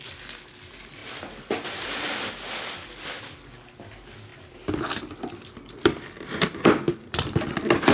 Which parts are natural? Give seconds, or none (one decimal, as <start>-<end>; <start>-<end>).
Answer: 0.0-1.0; 2.3-4.3; 5.0-7.9